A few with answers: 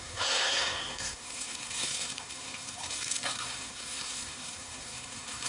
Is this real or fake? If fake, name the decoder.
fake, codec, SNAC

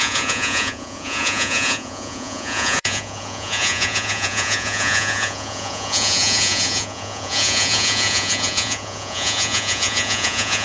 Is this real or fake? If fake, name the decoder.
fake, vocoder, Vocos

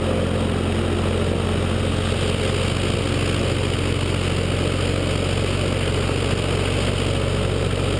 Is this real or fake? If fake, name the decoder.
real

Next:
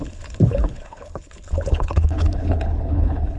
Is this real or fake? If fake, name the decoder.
fake, codec, HILCodec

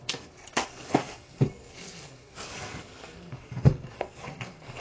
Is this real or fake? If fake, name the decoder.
fake, codec, SNAC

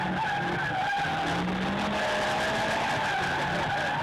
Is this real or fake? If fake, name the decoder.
real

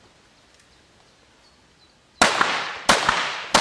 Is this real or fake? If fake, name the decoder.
real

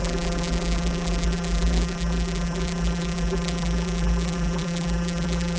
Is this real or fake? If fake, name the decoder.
fake, vocoder, BigVGAN v2